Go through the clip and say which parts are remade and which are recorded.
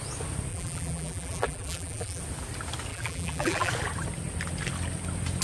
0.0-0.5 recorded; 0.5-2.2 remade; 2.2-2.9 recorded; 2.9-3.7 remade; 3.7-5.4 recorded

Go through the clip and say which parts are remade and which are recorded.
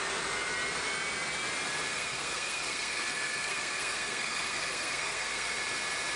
0.0-1.9 recorded; 1.9-5.6 remade; 5.6-6.2 recorded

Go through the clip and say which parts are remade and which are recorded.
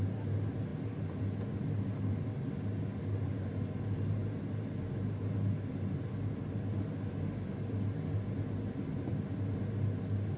0.0-10.4 recorded